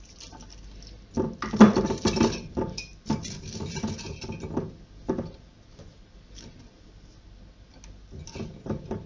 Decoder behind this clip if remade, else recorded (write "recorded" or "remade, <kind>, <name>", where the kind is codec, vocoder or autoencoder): recorded